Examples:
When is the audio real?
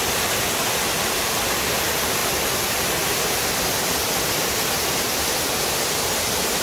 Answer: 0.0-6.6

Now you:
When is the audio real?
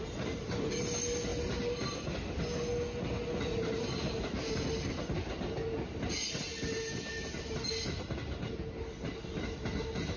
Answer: 0.0-10.2